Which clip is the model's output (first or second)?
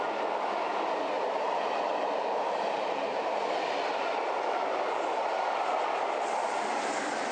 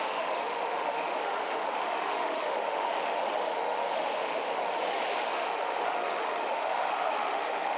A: second